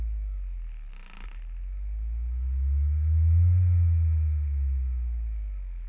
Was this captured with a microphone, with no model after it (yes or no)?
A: yes